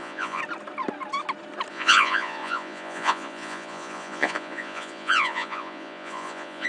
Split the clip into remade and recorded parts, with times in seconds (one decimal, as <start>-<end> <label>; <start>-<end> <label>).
0.0-0.4 remade; 0.4-1.7 recorded; 1.7-6.7 remade